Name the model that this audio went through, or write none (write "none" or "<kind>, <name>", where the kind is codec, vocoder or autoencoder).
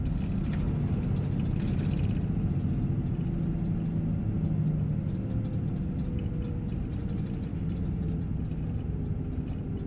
none